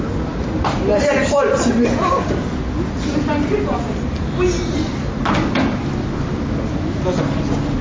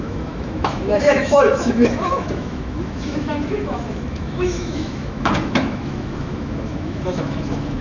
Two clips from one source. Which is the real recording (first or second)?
first